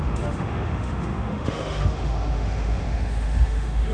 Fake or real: fake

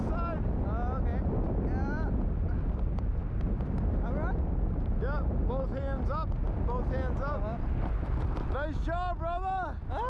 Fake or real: real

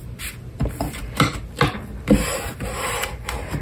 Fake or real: real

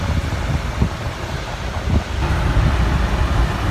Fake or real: real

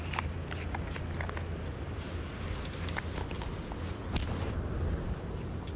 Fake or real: real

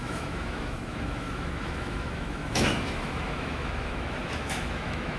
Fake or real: fake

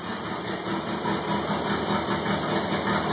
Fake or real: real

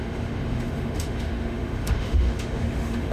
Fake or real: fake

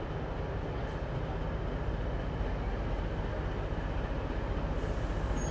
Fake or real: real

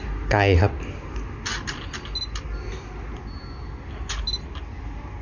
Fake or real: real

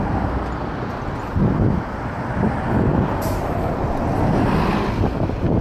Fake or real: real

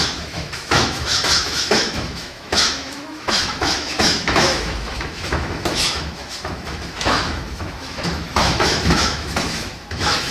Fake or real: fake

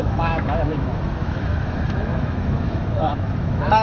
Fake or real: fake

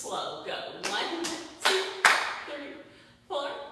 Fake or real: fake